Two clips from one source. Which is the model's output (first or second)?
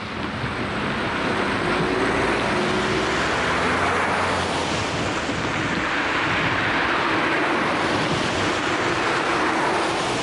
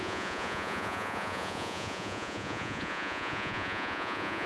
second